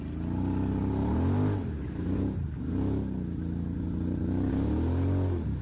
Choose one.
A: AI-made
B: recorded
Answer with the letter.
B